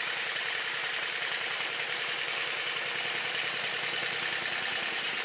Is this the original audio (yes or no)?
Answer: no